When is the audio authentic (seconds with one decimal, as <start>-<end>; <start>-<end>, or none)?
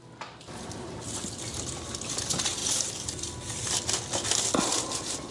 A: 0.0-5.3